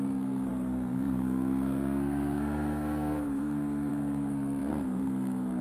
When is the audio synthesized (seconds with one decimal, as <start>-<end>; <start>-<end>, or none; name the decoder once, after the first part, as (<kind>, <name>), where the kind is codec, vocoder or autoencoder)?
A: 0.0-5.6 (codec, SNAC)